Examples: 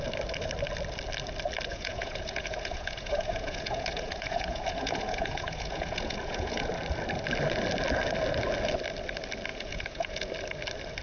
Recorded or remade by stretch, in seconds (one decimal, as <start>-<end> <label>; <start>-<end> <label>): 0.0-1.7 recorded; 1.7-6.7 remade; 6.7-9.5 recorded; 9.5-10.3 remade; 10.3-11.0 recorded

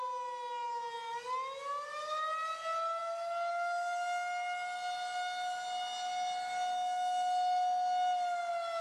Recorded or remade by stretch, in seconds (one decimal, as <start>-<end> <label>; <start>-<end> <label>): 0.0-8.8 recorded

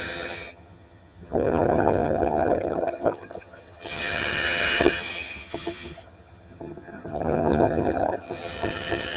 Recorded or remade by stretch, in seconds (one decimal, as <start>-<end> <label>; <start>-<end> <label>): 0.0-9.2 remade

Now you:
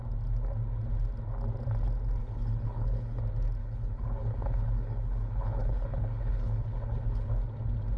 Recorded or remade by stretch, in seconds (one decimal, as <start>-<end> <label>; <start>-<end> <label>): 0.0-2.2 recorded; 2.2-3.2 remade; 3.2-3.6 recorded; 3.6-7.3 remade; 7.3-8.0 recorded

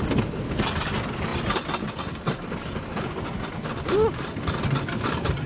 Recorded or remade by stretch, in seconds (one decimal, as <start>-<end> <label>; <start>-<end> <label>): 0.0-5.5 recorded